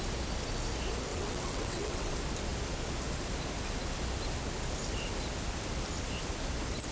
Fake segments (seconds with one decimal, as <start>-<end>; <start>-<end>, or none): 1.1-2.1